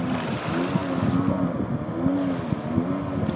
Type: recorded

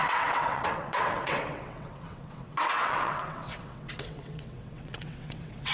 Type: remade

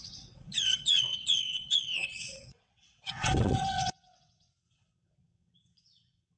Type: remade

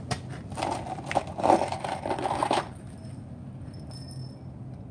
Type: recorded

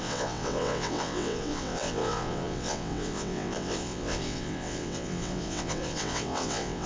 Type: remade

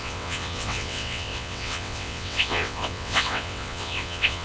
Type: remade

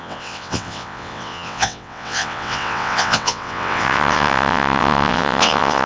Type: remade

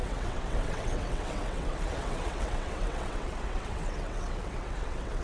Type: remade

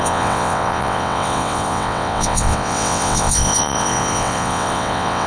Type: remade